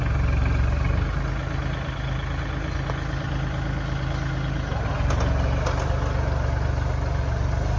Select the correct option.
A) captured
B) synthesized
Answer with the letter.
A